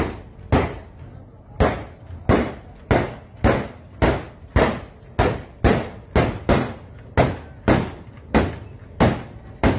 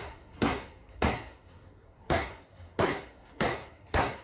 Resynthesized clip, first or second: second